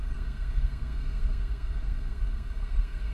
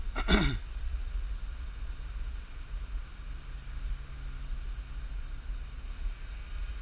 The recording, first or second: second